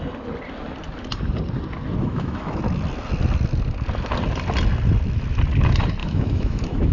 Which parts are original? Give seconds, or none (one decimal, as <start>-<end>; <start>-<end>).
0.0-2.0; 2.6-6.0